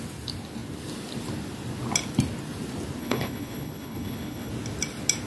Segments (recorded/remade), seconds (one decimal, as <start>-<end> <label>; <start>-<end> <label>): 0.0-3.0 recorded; 3.0-4.5 remade; 4.5-5.3 recorded